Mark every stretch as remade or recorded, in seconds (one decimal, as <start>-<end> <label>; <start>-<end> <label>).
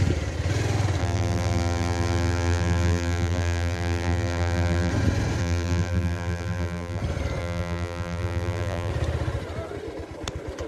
0.0-1.0 recorded; 1.0-4.9 remade; 4.9-5.4 recorded; 5.4-7.0 remade; 7.0-7.4 recorded; 7.4-8.9 remade; 8.9-10.7 recorded